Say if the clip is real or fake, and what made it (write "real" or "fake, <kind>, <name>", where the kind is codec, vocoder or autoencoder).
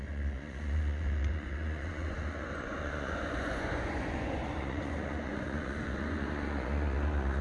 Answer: fake, vocoder, Vocos